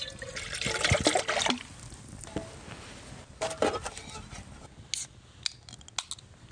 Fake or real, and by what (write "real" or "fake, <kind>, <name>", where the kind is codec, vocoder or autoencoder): real